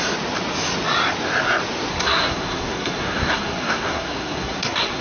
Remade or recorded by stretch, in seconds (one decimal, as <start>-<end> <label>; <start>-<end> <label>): 0.0-1.9 recorded; 1.9-5.0 remade